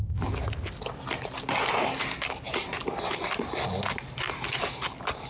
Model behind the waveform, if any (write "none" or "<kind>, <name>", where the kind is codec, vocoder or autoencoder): none